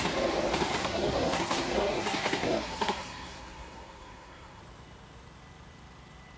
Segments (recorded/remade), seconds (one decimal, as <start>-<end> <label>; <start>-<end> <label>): 0.0-0.8 recorded; 0.8-4.6 remade; 4.6-6.4 recorded